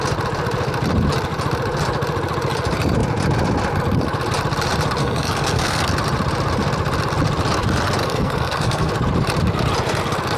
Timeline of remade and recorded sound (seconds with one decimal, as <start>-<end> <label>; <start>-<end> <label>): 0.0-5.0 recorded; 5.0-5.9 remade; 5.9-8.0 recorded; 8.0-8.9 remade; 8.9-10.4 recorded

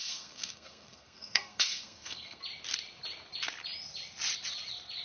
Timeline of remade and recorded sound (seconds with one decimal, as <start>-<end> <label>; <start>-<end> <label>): 0.0-2.4 remade; 2.4-5.0 recorded

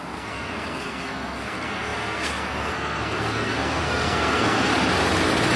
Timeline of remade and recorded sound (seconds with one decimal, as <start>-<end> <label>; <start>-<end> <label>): 0.0-4.7 remade; 4.7-5.6 recorded